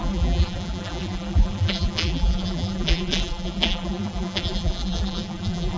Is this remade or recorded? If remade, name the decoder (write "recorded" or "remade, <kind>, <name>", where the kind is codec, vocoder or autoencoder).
remade, vocoder, BigVGAN v2